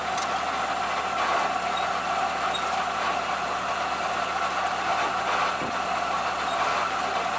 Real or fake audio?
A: real